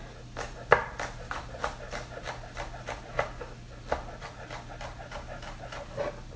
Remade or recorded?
recorded